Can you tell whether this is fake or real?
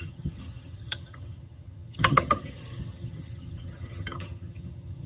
fake